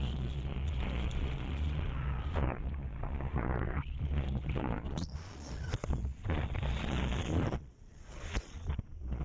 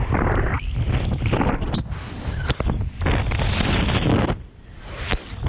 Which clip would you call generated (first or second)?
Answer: first